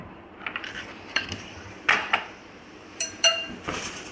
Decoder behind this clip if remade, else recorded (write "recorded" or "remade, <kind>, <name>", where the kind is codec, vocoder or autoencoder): remade, vocoder, BigVGAN v2